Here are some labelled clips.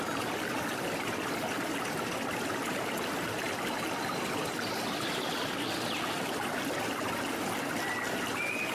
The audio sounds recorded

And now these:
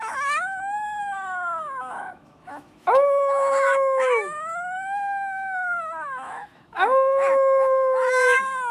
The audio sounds remade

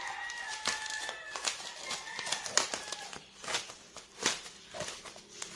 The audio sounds recorded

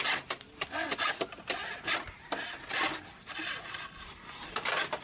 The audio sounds recorded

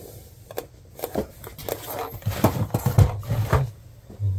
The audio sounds recorded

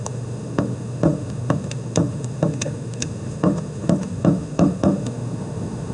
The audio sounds remade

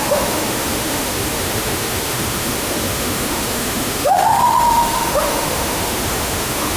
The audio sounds remade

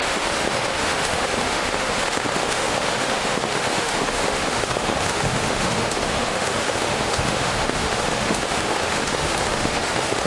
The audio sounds remade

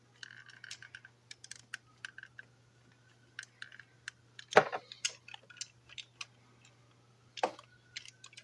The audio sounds recorded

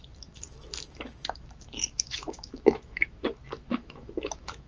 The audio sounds remade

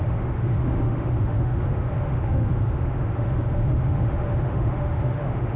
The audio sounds remade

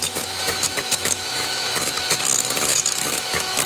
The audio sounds remade